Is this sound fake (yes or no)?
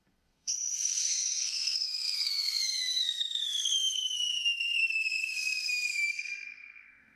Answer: yes